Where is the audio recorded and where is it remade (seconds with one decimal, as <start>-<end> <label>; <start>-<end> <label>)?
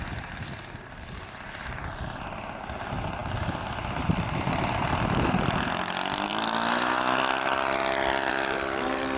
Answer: 0.0-9.2 recorded